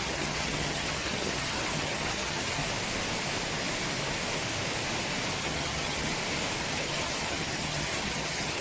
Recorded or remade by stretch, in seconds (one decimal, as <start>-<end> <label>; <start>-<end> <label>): 0.0-2.6 remade; 2.6-5.4 recorded; 5.4-6.1 remade; 6.1-6.7 recorded; 6.7-8.6 remade